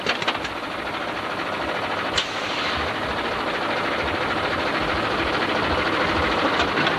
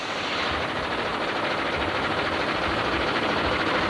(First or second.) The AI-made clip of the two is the second